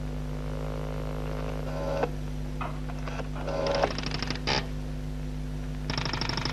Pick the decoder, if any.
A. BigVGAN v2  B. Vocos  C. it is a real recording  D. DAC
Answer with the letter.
C